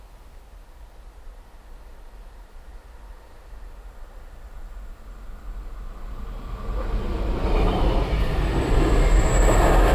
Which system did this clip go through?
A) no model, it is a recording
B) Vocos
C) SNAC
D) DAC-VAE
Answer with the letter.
A